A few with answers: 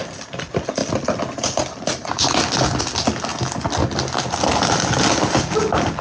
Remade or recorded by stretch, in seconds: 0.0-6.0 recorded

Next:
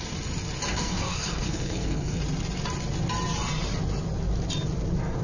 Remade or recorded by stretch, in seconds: 0.0-0.7 recorded; 0.7-2.2 remade; 2.2-5.2 recorded

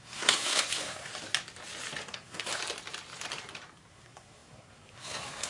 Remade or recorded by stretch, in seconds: 0.0-1.1 remade; 1.1-2.1 recorded; 2.1-2.5 remade; 2.5-3.9 recorded; 3.9-5.5 remade